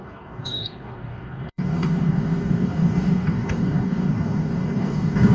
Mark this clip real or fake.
fake